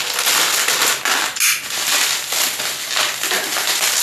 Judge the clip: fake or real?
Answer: real